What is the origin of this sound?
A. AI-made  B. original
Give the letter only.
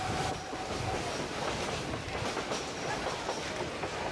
B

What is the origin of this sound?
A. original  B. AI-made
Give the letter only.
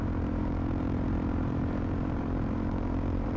B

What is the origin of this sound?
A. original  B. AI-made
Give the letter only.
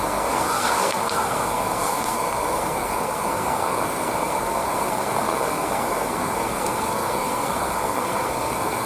B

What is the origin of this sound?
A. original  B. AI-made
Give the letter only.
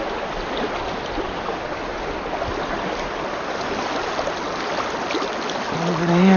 A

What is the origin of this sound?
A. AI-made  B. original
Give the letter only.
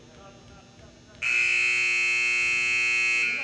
B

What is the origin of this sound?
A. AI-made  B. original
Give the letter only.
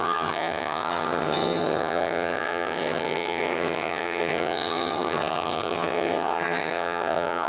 A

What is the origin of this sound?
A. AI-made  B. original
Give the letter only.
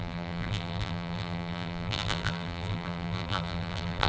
A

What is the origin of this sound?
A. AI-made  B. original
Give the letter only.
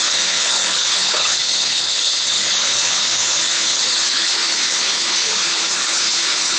A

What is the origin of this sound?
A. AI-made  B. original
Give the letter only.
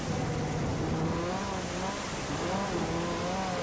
B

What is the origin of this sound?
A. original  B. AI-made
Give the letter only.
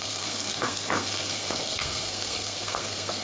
B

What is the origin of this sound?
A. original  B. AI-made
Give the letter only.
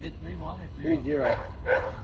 B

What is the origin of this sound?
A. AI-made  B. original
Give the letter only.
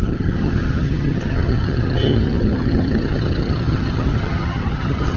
A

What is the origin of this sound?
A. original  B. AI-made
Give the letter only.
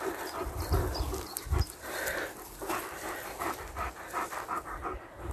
A